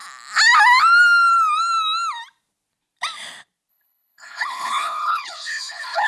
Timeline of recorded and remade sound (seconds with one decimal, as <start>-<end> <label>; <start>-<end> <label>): 0.0-3.7 recorded; 3.7-6.1 remade